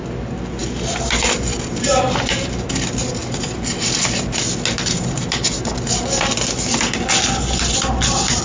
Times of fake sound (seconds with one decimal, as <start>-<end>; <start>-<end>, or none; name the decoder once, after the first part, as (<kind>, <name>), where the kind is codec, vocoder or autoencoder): none